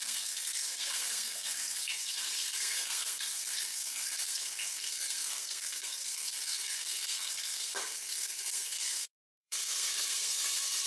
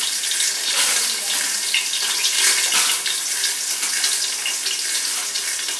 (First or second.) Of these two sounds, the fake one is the first